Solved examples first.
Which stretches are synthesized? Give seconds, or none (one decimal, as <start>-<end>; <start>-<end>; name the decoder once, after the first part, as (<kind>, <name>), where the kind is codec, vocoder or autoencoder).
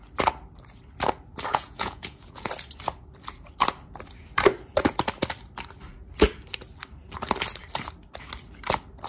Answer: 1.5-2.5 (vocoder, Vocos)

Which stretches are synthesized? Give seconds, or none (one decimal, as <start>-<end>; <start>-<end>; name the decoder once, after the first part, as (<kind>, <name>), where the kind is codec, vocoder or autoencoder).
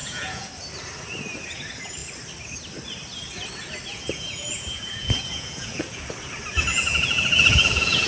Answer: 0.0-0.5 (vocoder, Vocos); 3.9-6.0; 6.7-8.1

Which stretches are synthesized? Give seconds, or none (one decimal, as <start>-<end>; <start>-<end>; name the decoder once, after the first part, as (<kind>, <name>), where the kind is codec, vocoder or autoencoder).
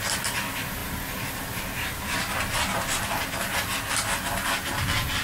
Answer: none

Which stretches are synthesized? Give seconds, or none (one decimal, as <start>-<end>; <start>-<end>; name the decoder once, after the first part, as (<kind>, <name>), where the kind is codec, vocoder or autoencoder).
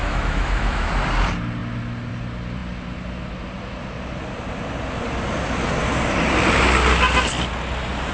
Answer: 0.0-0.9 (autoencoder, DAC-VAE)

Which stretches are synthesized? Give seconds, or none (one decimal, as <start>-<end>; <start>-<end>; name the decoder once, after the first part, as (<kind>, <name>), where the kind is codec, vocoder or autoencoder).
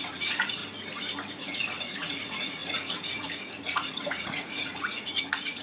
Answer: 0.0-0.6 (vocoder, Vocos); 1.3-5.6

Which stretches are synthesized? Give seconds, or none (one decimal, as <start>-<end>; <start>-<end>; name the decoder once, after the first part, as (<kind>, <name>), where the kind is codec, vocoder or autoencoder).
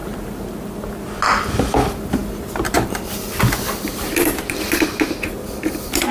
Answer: none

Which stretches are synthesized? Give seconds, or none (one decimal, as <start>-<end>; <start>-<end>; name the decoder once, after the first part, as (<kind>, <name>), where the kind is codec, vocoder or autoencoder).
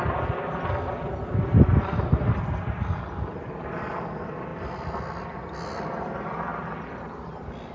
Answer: none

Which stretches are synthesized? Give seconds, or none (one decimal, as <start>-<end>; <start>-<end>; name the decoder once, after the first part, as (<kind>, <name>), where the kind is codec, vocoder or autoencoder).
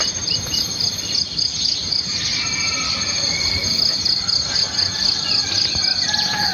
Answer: none